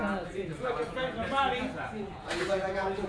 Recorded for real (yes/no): no